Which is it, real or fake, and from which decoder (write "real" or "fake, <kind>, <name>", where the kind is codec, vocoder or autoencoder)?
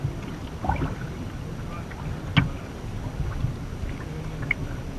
real